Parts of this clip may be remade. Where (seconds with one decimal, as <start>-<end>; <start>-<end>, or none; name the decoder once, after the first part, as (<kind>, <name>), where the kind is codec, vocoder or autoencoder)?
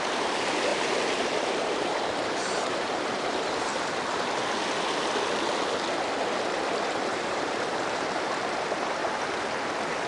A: 0.0-3.7 (vocoder, BigVGAN v2); 7.1-9.0